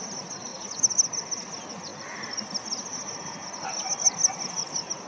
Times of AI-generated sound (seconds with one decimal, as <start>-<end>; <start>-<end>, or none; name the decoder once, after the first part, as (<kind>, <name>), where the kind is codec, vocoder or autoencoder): none